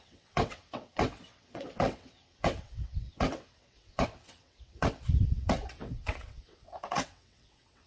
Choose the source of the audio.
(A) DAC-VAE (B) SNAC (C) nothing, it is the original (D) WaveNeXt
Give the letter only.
D